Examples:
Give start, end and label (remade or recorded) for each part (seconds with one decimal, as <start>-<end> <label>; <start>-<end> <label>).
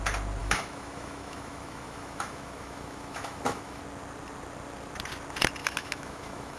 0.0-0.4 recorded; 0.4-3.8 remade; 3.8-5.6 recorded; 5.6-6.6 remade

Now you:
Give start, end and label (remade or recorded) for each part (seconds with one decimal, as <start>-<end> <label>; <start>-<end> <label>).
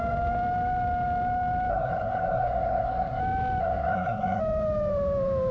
0.0-1.7 recorded; 1.7-3.2 remade; 3.2-3.6 recorded; 3.6-4.4 remade; 4.4-5.5 recorded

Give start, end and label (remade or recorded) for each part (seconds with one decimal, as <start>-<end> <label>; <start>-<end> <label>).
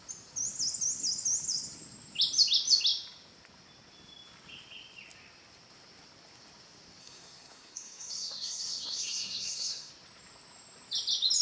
0.0-7.0 recorded; 7.0-9.9 remade; 9.9-11.4 recorded